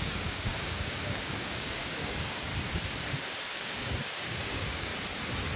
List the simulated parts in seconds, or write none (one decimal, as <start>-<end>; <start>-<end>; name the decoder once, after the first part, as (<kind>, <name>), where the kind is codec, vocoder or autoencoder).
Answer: 0.0-2.5 (codec, DAC); 3.5-4.9